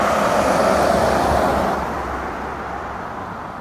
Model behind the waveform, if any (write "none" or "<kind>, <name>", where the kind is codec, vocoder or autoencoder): none